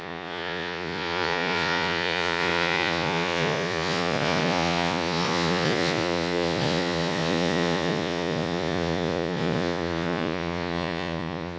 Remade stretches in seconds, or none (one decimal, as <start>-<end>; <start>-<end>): 0.0-11.6

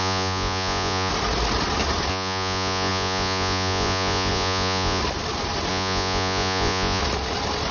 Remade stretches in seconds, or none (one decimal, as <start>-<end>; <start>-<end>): 0.0-1.1; 2.1-5.0; 5.7-7.0

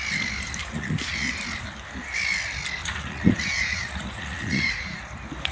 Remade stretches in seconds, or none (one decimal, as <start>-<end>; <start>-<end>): 0.6-1.4; 2.8-5.1

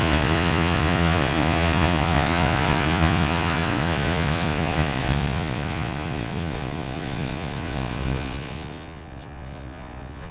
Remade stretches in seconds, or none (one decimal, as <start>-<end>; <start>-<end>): 0.0-10.3

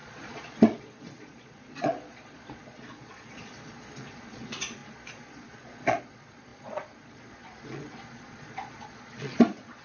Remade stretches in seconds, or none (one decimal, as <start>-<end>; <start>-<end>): 0.0-9.8

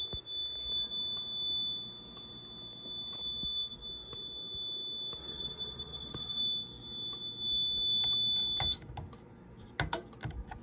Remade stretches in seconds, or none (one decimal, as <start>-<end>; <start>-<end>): 5.2-6.4